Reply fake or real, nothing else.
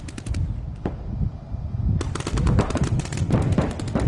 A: fake